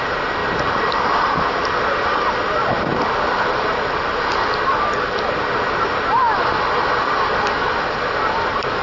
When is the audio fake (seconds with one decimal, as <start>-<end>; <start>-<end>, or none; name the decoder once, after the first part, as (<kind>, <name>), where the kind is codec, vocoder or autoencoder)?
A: none